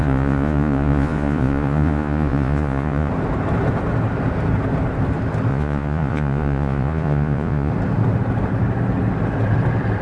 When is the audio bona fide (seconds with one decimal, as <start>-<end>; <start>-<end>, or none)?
3.1-5.5; 7.7-10.0